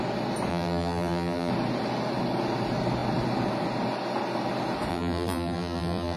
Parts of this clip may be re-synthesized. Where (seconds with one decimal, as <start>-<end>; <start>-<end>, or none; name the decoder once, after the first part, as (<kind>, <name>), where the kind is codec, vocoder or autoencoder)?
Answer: 0.5-1.5 (vocoder, BigVGAN v2); 4.9-6.2